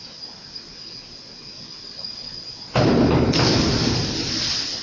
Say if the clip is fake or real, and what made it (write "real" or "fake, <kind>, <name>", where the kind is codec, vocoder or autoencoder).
real